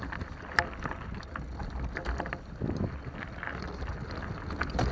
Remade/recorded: recorded